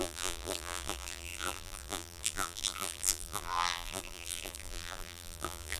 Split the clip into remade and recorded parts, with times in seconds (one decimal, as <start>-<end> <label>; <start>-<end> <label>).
0.0-5.8 remade